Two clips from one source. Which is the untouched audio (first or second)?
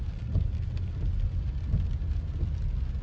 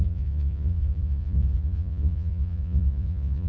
first